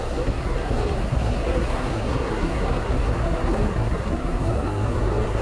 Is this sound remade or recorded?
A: remade